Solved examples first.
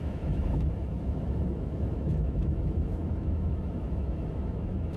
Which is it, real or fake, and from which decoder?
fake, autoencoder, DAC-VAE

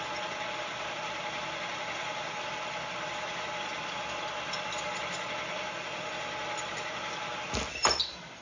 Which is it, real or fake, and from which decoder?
real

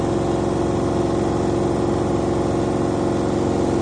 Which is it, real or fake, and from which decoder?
real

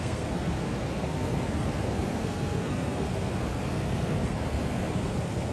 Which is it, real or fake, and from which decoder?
fake, codec, SNAC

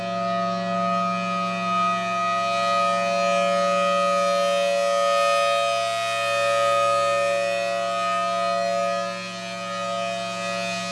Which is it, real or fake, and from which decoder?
real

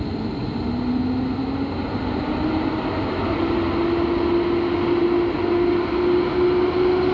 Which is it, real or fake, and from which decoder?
real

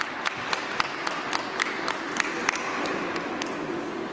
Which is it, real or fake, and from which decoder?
real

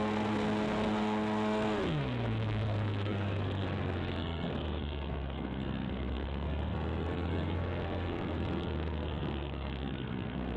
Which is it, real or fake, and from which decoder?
fake, codec, SNAC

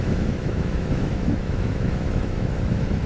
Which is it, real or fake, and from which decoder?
fake, autoencoder, DAC-VAE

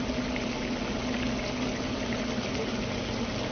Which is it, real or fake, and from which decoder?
real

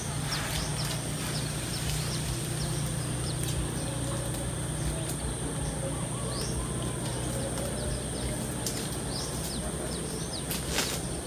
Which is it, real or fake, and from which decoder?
real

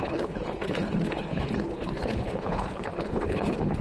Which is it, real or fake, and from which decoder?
fake, codec, HILCodec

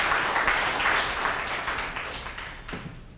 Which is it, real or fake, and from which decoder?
real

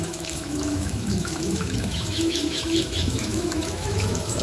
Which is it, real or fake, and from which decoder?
fake, autoencoder, DAC-VAE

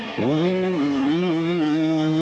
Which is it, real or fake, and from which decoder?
fake, codec, SNAC